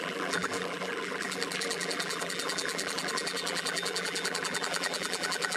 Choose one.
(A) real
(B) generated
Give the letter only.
B